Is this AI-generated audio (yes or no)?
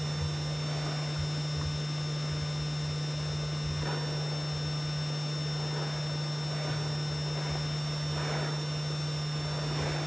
no